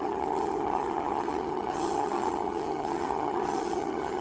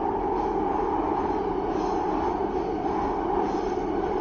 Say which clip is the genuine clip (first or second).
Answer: second